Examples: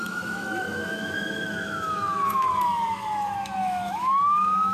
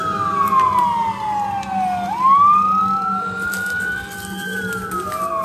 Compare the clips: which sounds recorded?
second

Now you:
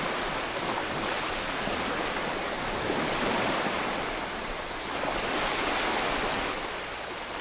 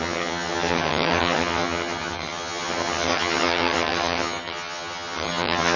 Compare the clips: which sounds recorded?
first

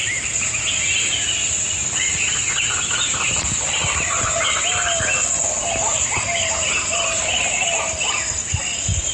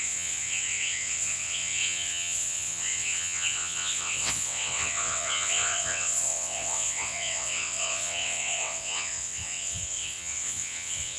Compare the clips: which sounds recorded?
first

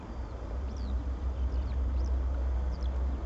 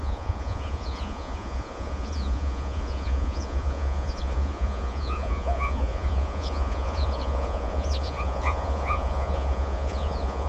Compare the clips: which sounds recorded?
first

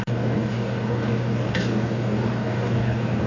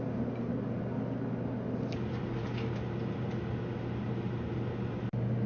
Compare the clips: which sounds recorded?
second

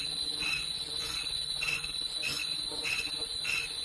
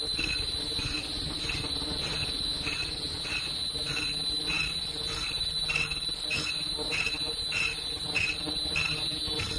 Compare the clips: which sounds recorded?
second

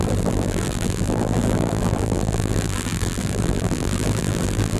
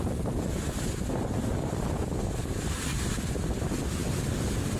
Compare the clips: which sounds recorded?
second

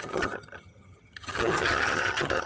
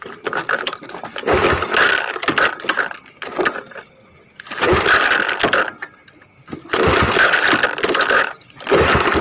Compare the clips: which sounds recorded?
second